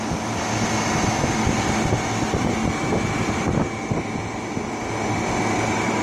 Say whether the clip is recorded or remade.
recorded